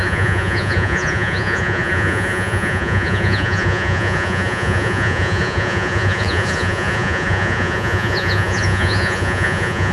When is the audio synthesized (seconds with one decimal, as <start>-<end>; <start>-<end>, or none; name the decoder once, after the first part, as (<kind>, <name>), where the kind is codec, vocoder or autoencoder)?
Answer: 0.0-9.9 (vocoder, Vocos)